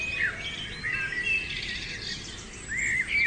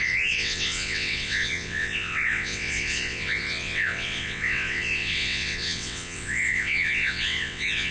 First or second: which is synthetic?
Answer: second